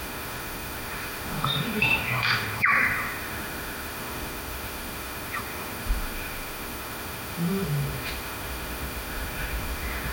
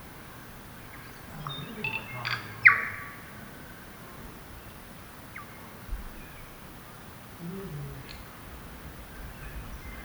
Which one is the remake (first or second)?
first